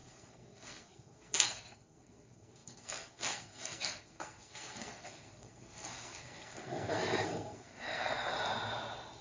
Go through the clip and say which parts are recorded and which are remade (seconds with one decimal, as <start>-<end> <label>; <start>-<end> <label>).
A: 0.0-8.3 remade; 8.3-9.2 recorded